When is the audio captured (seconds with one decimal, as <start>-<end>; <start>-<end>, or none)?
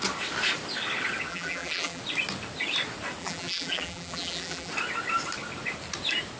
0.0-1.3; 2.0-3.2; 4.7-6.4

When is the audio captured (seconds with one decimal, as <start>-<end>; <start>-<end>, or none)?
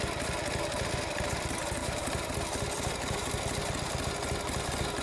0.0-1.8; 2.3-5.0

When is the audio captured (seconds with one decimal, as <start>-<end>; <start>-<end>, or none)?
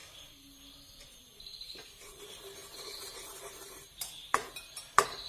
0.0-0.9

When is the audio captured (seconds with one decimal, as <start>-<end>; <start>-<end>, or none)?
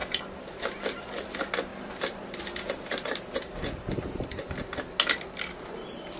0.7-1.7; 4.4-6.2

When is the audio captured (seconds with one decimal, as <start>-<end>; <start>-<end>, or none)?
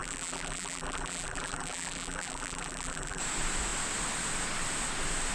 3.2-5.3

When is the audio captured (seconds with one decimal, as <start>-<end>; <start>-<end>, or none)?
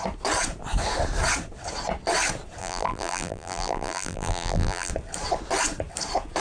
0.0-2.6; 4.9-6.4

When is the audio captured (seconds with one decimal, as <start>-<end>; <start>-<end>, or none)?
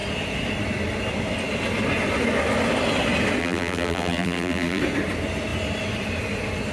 0.0-3.4; 4.8-6.7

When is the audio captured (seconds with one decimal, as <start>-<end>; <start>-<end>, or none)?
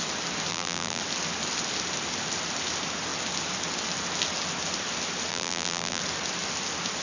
0.0-0.5; 1.0-5.3; 6.0-7.0